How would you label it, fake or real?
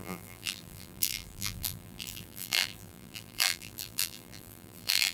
fake